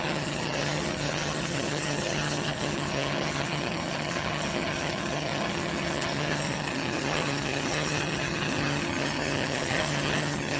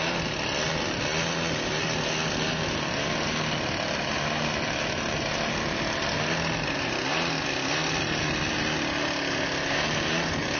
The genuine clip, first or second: second